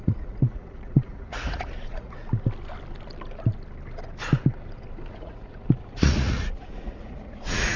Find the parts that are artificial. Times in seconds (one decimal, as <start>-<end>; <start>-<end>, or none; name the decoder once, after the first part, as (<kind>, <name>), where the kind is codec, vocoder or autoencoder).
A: 0.0-2.2 (vocoder, Vocos); 5.1-7.8